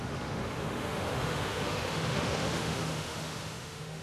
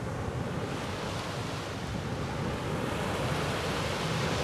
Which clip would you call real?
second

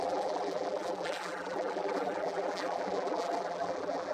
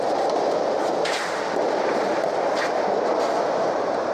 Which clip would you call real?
second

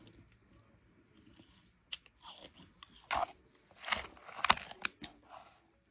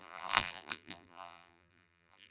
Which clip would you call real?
first